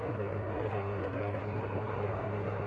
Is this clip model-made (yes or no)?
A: yes